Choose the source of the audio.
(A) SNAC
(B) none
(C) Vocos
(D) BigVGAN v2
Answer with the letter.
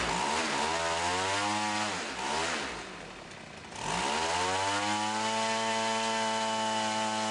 B